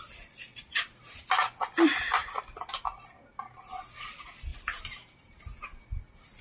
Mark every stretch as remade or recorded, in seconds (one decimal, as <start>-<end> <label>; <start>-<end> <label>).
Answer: 0.0-0.5 recorded; 0.5-1.2 remade; 1.2-4.5 recorded; 4.5-5.4 remade; 5.4-6.4 recorded

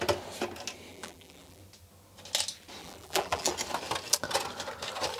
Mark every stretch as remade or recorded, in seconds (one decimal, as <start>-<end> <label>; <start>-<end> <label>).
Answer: 0.0-0.9 recorded; 0.9-1.6 remade; 1.6-2.8 recorded; 2.8-3.5 remade; 3.5-5.2 recorded

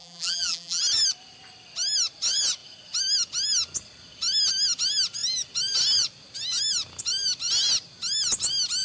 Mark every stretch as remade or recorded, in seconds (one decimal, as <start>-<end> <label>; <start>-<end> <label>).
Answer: 0.0-0.8 remade; 0.8-8.8 recorded